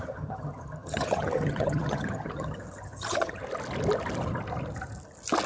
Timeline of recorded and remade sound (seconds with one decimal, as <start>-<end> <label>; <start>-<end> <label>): 0.0-3.4 remade; 3.4-5.5 recorded